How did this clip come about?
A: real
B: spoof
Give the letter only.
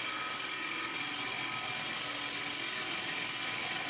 A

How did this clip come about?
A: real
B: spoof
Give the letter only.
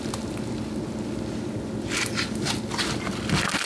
A